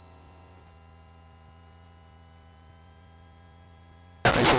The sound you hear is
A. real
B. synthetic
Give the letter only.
A